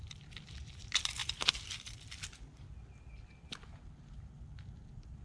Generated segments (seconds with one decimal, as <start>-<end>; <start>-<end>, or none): none